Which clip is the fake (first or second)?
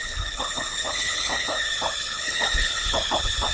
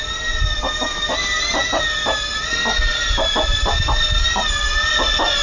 first